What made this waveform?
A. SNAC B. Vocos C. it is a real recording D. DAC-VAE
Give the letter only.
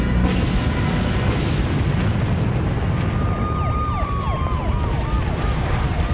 C